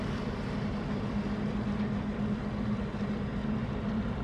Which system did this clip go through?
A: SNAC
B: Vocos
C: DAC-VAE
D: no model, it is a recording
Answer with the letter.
D